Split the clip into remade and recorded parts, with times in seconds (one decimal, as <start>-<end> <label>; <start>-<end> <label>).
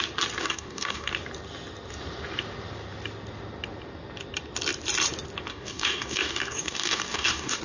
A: 0.0-0.4 recorded; 0.4-1.1 remade; 1.1-5.5 recorded; 5.5-7.6 remade